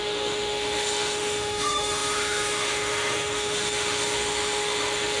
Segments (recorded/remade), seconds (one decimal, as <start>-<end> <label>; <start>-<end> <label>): 0.0-5.2 remade